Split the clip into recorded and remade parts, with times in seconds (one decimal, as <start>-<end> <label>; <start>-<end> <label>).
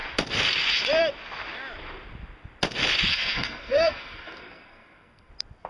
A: 0.0-3.1 recorded; 3.1-5.3 remade; 5.3-5.7 recorded